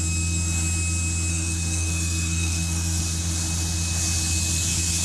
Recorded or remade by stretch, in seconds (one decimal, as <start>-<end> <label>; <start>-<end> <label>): 0.0-1.3 recorded; 1.3-3.0 remade; 3.0-5.0 recorded